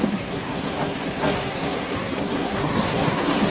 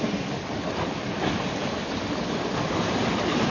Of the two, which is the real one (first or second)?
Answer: second